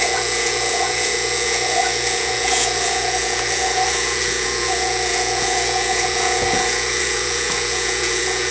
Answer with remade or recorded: remade